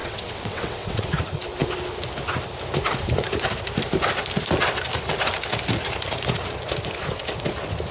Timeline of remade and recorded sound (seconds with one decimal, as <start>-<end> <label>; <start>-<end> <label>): 0.0-1.1 remade; 1.1-7.9 recorded